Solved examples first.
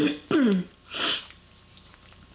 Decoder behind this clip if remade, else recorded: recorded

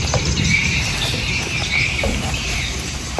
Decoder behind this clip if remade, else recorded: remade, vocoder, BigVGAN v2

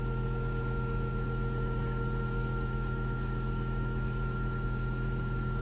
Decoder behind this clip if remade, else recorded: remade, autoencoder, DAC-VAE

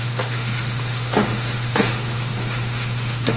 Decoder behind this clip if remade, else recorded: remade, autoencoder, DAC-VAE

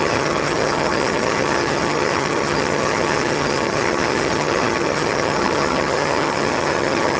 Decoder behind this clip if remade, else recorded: remade, vocoder, HiFi-GAN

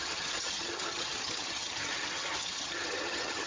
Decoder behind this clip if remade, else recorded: remade, vocoder, HiFi-GAN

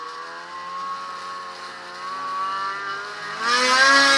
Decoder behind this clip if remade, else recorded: recorded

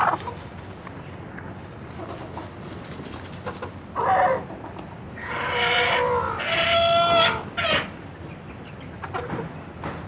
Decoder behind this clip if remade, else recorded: recorded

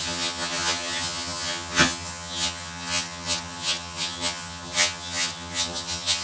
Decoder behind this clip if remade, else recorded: remade, vocoder, HiFi-GAN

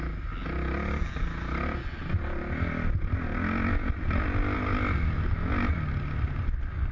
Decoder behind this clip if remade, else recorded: recorded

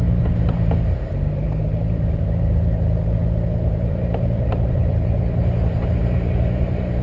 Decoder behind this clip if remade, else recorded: remade, vocoder, BigVGAN v2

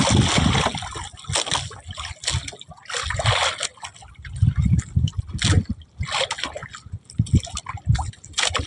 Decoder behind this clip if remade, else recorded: recorded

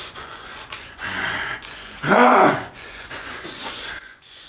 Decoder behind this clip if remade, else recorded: remade, vocoder, Vocos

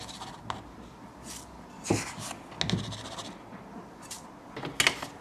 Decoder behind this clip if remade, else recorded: recorded